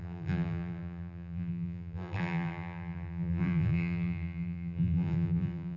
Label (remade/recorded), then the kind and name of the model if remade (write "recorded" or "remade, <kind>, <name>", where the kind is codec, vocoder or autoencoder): remade, vocoder, BigVGAN v2